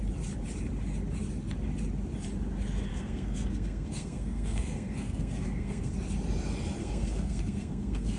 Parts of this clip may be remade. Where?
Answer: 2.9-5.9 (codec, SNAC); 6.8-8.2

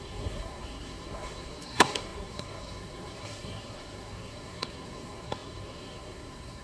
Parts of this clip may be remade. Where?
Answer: 0.0-6.6 (codec, SNAC)